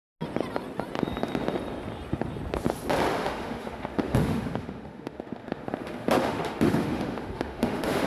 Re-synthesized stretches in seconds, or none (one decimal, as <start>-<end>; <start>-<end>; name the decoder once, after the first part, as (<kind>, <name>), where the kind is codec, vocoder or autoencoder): 3.1-8.1 (autoencoder, DAC-VAE)